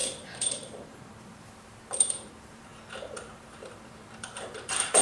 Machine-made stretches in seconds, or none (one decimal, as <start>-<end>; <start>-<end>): 0.0-2.7; 3.3-5.0